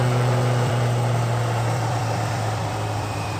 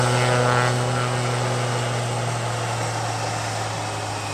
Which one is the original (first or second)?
second